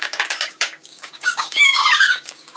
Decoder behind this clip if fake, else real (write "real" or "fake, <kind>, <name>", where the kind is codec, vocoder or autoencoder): fake, codec, DAC